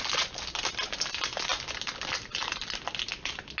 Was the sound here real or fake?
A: real